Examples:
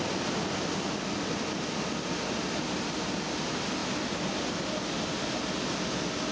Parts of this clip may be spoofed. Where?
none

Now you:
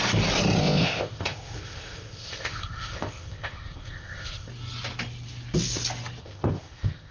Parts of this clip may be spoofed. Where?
0.6-4.5 (codec, ZipCodec); 6.2-7.1